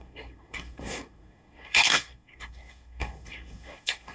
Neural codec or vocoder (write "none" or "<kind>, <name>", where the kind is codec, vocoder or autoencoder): codec, SNAC